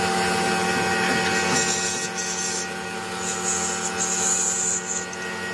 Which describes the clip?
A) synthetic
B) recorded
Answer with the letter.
B